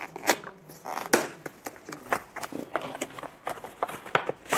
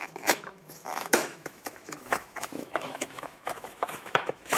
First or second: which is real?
first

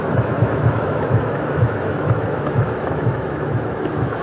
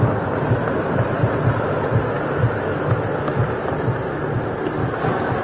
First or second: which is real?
second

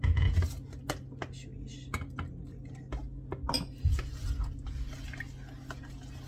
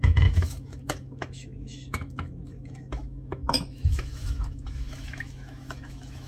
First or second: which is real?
first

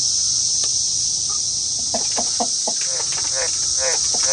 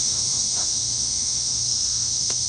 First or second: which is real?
first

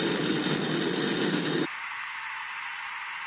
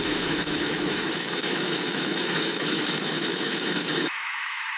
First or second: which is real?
first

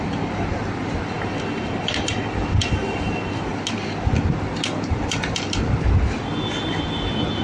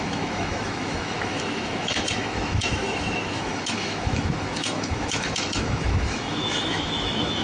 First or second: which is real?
first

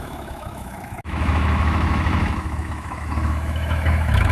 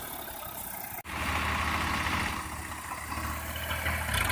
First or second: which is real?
second